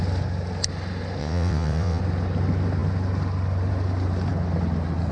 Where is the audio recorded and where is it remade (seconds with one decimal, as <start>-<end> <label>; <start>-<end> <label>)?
0.0-1.2 recorded; 1.2-2.0 remade; 2.0-5.1 recorded